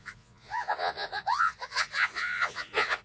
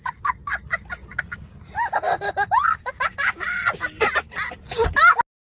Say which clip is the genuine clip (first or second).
second